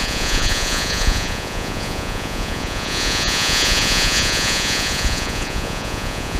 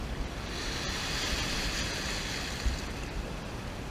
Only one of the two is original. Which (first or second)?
second